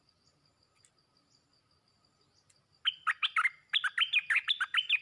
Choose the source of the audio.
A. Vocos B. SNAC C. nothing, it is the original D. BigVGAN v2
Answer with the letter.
C